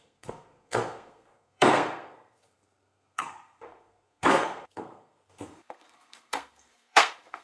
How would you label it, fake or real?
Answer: fake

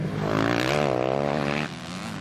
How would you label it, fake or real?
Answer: real